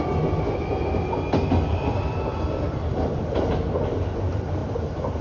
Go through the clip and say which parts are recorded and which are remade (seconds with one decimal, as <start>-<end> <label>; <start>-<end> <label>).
0.0-2.3 recorded; 2.3-3.4 remade; 3.4-4.6 recorded; 4.6-5.2 remade